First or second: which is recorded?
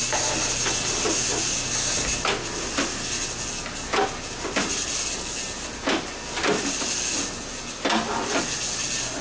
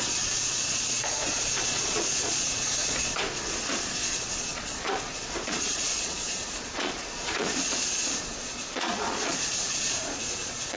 first